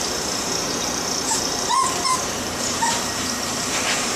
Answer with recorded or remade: remade